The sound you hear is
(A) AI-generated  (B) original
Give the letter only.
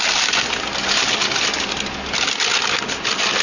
B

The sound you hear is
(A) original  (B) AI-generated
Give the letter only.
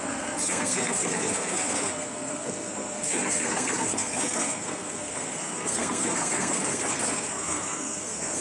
B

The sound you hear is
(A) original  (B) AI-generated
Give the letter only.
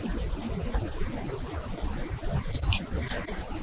A